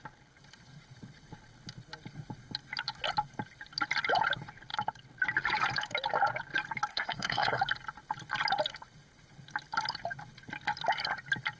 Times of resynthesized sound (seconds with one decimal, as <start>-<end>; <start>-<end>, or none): 6.9-7.6